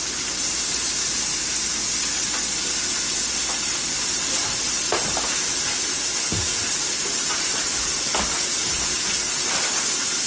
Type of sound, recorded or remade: recorded